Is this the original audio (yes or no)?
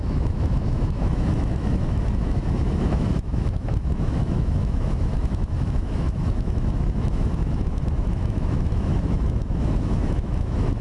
no